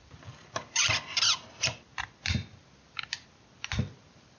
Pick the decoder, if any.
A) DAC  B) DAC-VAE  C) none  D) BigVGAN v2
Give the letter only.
C